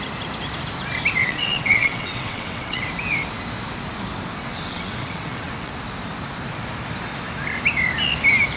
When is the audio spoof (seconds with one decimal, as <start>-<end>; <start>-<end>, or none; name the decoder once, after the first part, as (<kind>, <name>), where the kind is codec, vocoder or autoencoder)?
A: 1.2-2.8 (vocoder, WaveNeXt); 4.4-5.7